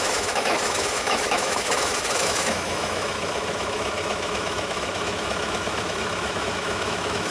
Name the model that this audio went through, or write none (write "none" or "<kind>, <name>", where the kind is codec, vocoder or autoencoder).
autoencoder, DAC-VAE